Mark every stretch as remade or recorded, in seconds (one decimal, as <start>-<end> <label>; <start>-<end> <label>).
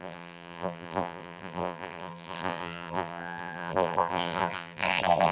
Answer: 0.0-5.3 remade